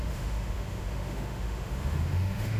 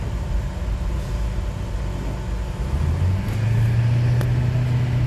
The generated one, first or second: first